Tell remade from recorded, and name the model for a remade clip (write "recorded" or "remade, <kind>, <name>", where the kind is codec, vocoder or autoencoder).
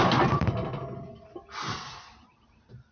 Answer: recorded